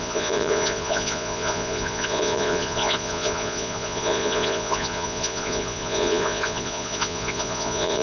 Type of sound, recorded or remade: remade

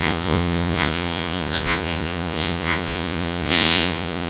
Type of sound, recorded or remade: remade